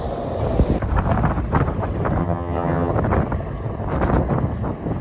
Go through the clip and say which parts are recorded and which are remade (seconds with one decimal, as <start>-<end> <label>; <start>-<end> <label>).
0.0-2.2 recorded; 2.2-2.9 remade; 2.9-5.0 recorded